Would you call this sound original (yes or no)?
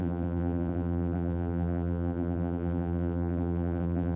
no